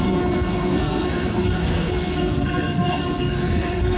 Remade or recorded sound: remade